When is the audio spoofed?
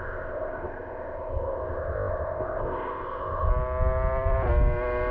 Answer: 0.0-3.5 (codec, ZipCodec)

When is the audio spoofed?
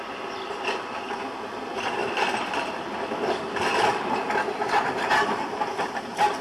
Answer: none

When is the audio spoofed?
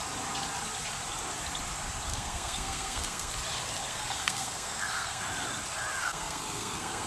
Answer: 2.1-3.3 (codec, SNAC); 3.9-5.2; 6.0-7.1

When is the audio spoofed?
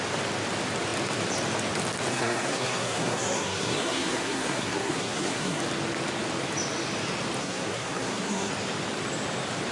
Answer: 2.1-5.6 (codec, SNAC); 7.4-8.5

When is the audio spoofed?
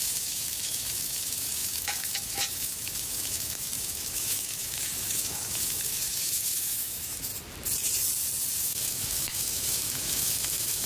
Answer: 0.0-7.3 (autoencoder, DAC-VAE); 8.6-10.9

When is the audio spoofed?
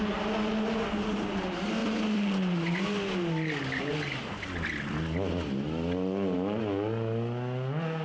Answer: none